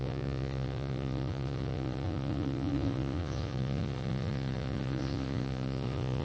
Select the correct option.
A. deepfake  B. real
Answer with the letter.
A